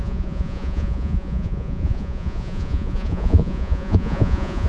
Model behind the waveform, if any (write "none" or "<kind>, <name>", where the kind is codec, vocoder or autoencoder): vocoder, Vocos